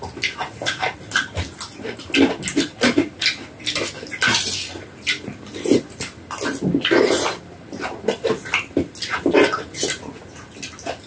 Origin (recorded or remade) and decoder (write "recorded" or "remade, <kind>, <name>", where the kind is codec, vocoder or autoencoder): recorded